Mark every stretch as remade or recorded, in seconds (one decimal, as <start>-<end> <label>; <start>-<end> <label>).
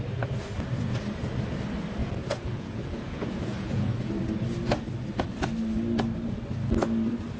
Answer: 0.0-2.0 recorded; 2.0-4.1 remade; 4.1-7.4 recorded